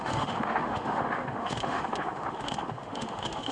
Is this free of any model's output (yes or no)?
no